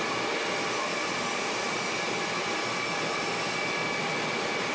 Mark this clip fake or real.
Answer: real